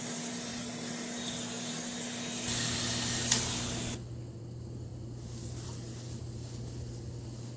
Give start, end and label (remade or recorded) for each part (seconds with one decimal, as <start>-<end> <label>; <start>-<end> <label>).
0.0-7.6 recorded